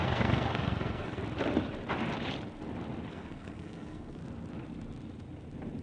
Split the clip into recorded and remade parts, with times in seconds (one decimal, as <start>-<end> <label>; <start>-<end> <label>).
0.0-1.2 remade; 1.2-3.1 recorded; 3.1-4.2 remade; 4.2-5.8 recorded